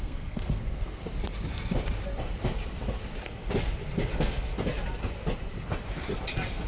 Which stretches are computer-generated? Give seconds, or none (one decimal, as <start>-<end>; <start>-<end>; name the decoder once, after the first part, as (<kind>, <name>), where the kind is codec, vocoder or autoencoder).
0.0-1.0 (codec, SNAC); 4.1-4.5